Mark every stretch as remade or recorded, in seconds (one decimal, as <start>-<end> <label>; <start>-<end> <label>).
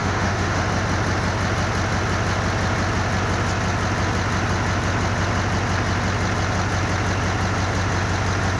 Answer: 0.0-0.6 remade; 0.6-8.6 recorded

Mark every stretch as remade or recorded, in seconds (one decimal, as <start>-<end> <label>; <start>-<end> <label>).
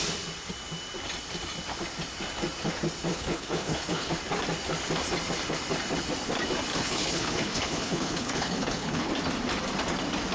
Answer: 0.0-3.1 recorded; 3.1-4.1 remade; 4.1-6.7 recorded; 6.7-9.1 remade; 9.1-10.3 recorded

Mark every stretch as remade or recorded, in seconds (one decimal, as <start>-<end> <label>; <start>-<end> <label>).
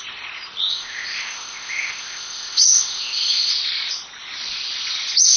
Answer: 0.0-0.7 recorded; 0.7-3.5 remade; 3.5-5.4 recorded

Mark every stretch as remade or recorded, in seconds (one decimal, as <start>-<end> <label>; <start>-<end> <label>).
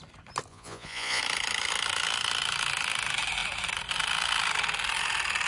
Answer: 0.0-0.5 recorded; 0.5-1.2 remade; 1.2-5.5 recorded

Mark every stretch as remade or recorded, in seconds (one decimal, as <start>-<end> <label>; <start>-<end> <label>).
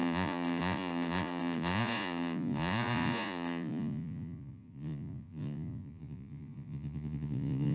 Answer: 0.0-7.7 remade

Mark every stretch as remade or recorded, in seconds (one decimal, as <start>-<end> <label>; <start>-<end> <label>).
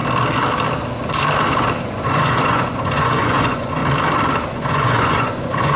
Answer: 0.0-1.8 recorded; 1.8-3.8 remade; 3.8-4.5 recorded; 4.5-5.8 remade